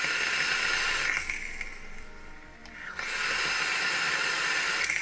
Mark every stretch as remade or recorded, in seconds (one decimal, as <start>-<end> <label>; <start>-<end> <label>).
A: 0.0-5.0 recorded